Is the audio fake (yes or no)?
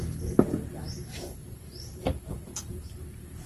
yes